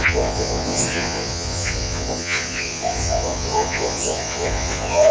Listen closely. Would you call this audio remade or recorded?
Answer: remade